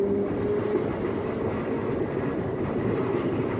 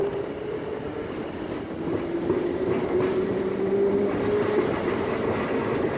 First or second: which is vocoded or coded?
second